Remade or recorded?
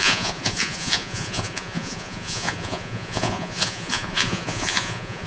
remade